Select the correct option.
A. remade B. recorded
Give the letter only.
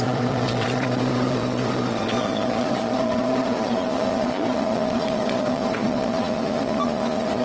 A